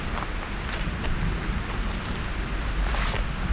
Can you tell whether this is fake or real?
real